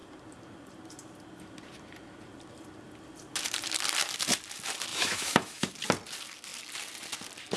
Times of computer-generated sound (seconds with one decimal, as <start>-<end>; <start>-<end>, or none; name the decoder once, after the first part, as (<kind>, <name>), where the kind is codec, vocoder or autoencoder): 4.9-5.7 (autoencoder, DAC-VAE)